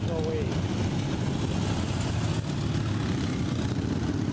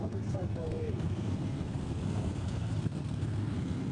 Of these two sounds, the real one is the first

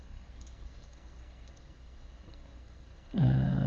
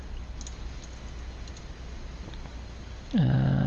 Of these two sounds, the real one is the second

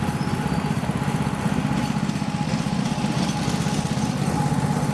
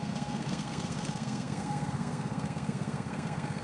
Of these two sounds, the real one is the first